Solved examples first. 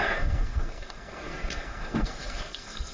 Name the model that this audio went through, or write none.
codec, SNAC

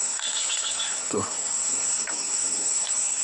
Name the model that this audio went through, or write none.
codec, SNAC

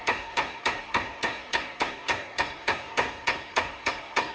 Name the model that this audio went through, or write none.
codec, SNAC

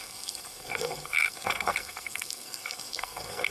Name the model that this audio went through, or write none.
codec, SNAC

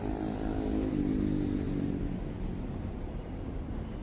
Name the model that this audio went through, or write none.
none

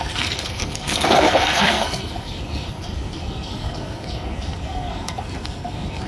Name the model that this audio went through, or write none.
codec, SNAC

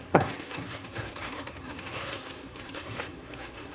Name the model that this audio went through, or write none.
codec, SNAC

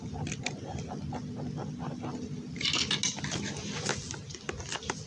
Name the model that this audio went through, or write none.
none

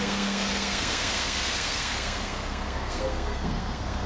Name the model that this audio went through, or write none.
codec, SNAC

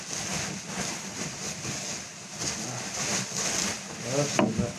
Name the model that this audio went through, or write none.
none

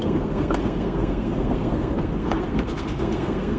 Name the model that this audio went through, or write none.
codec, SNAC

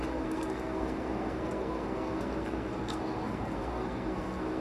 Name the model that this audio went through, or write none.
codec, SNAC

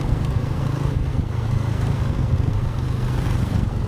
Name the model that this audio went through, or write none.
codec, SNAC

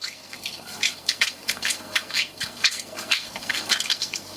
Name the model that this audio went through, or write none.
codec, SNAC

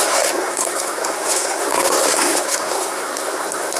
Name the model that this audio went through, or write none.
codec, SNAC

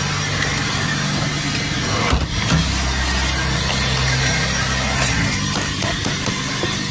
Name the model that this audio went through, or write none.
none